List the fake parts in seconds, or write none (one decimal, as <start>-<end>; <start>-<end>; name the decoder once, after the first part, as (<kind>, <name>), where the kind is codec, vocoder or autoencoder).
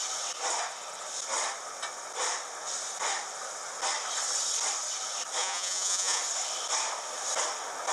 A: 5.4-6.2 (vocoder, Vocos)